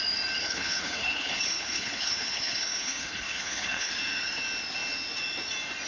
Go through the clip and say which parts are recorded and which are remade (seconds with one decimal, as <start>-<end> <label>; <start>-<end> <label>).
0.0-0.4 recorded; 0.4-3.9 remade; 3.9-5.9 recorded